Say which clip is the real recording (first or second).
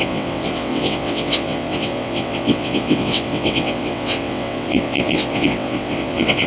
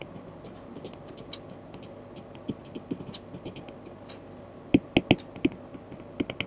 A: second